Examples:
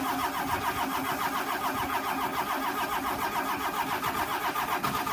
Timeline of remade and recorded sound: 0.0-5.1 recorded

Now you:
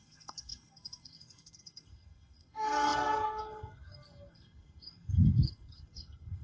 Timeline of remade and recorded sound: 0.0-6.4 remade

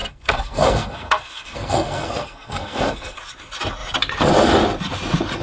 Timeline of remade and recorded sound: 0.0-3.2 remade; 3.2-5.4 recorded

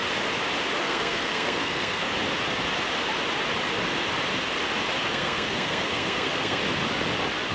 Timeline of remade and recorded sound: 0.0-0.8 recorded; 0.8-2.1 remade; 2.1-5.0 recorded; 5.0-6.6 remade; 6.6-7.5 recorded

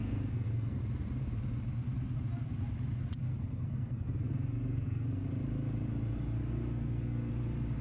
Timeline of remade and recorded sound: 0.0-0.8 remade; 0.8-3.2 recorded; 3.2-5.3 remade; 5.3-6.4 recorded; 6.4-7.3 remade; 7.3-7.8 recorded

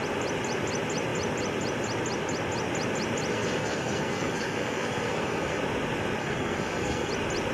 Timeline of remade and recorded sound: 0.0-3.3 recorded; 3.3-5.6 remade; 5.6-6.2 recorded; 6.2-7.1 remade; 7.1-7.5 recorded

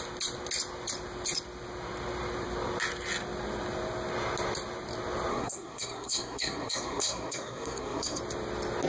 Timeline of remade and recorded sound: 0.0-5.3 recorded; 5.3-8.2 remade; 8.2-8.9 recorded

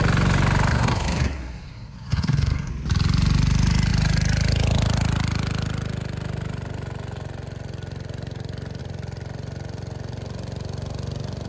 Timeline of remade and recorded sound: 0.0-0.7 recorded; 0.7-2.7 remade; 2.7-11.5 recorded